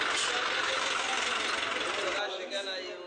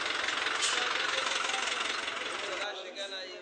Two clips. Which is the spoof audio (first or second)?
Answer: first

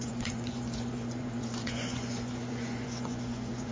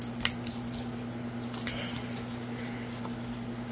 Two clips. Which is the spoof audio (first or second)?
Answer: first